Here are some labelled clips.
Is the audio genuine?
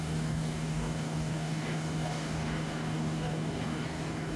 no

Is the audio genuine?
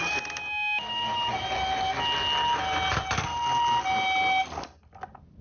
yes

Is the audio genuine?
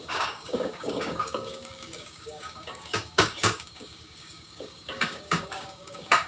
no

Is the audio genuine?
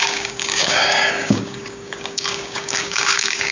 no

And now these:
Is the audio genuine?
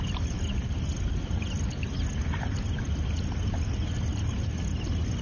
yes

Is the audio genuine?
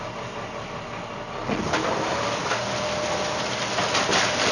yes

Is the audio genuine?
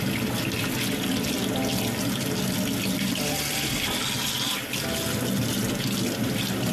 yes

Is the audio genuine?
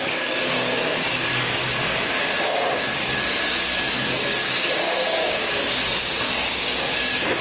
no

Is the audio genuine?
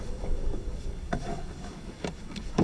no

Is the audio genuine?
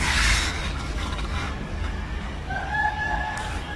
no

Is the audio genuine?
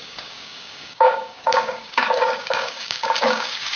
no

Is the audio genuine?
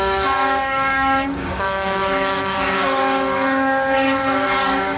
no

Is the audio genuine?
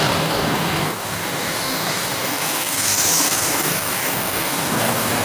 no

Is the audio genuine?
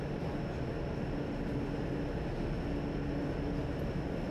yes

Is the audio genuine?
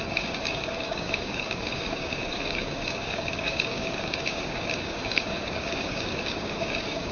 no